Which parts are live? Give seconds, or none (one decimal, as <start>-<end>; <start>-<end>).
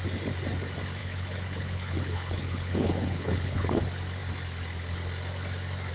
0.0-1.0; 3.8-5.9